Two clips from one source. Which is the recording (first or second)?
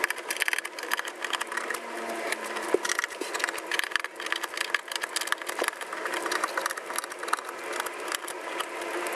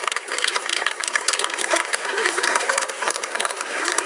first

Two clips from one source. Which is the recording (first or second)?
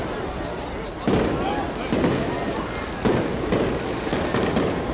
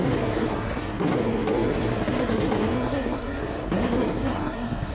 first